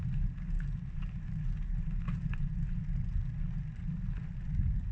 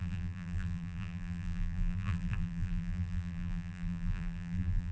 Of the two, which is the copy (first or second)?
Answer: second